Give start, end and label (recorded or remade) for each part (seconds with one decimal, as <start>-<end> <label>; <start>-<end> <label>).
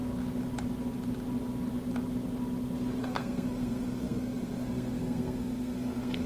0.0-3.0 recorded; 3.0-6.3 remade